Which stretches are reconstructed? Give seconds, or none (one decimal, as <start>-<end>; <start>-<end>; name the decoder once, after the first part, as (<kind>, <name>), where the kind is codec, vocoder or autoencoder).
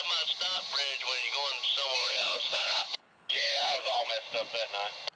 2.0-4.1 (codec, HILCodec)